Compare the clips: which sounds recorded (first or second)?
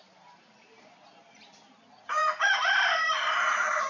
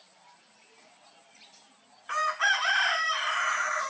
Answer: second